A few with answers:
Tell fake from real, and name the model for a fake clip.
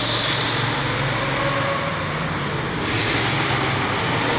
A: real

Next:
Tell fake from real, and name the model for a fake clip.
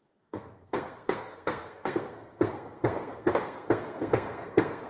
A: fake, codec, SNAC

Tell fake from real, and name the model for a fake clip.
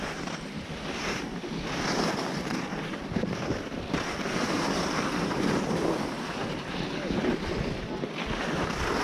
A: real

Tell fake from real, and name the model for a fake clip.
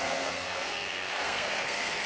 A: fake, codec, SNAC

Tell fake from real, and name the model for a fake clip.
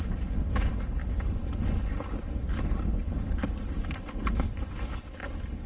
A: real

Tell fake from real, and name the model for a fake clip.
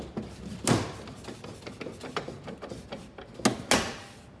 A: real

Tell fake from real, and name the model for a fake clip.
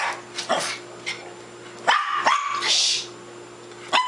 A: real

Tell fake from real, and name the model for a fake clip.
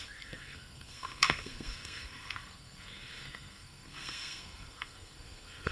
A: fake, codec, SNAC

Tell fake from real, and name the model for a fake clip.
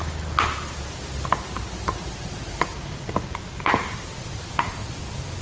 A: real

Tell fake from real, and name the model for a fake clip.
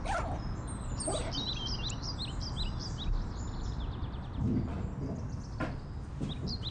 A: real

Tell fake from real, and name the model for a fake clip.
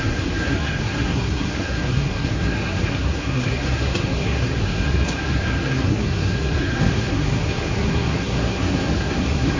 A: fake, codec, SNAC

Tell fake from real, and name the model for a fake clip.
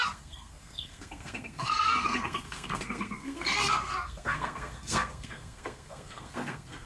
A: fake, codec, SNAC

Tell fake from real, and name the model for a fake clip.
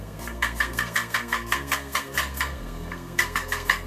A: fake, codec, SNAC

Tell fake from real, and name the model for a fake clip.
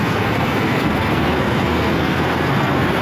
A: fake, codec, SNAC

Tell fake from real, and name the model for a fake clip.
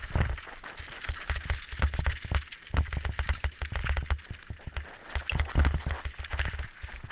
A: real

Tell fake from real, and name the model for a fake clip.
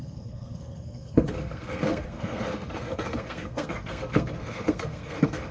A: fake, codec, SNAC